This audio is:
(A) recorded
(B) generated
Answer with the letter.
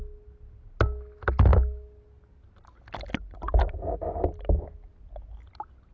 A